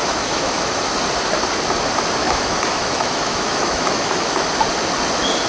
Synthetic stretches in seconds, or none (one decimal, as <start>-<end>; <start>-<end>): 0.0-0.8; 2.2-4.5